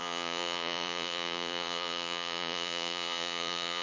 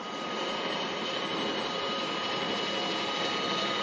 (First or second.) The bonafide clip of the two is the second